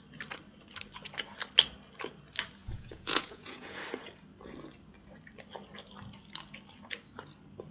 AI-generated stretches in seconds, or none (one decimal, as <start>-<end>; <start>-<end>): 2.6-3.8